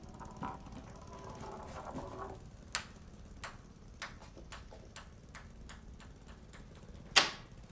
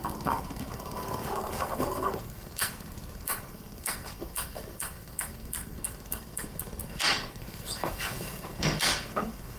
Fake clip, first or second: second